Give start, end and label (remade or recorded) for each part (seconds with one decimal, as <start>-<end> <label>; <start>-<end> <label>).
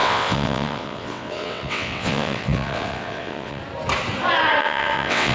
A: 0.0-3.6 remade; 3.6-4.6 recorded; 4.6-5.3 remade